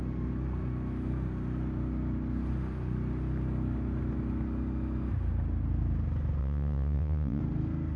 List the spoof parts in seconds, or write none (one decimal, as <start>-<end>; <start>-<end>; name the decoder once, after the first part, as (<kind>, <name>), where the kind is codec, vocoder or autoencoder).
6.4-7.4 (vocoder, WaveNeXt)